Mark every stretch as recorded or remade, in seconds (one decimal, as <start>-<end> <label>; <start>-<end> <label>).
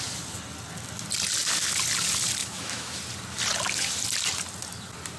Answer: 0.0-2.4 recorded; 2.4-3.0 remade; 3.0-5.2 recorded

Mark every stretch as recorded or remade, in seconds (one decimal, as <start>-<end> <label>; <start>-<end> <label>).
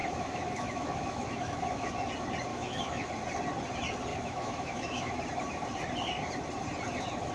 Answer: 0.0-1.9 remade; 1.9-2.5 recorded; 2.5-3.1 remade; 3.1-4.1 recorded; 4.1-5.2 remade; 5.2-7.3 recorded